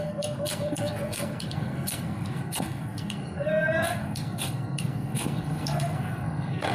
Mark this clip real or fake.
fake